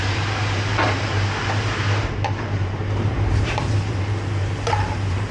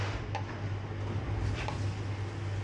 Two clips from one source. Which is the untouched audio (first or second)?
second